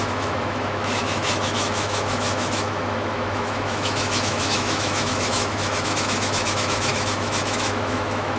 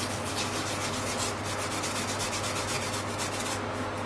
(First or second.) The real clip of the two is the second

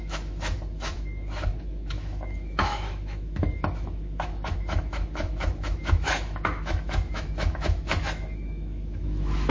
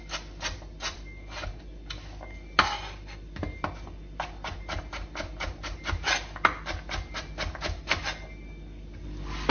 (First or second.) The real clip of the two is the second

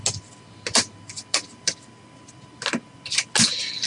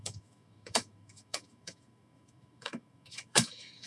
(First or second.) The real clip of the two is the first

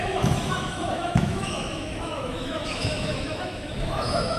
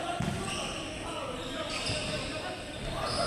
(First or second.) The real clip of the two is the second